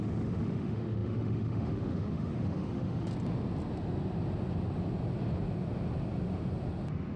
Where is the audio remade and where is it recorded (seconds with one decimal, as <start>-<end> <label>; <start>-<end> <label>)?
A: 0.0-3.1 remade; 3.1-7.2 recorded